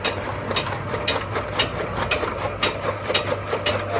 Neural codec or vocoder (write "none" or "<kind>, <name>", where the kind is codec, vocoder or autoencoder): none